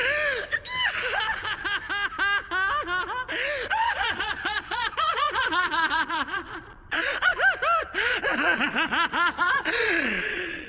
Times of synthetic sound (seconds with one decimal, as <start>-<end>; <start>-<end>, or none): 3.7-7.3; 7.8-10.7